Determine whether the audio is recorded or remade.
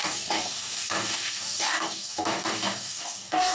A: remade